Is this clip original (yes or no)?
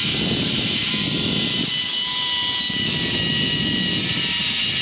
yes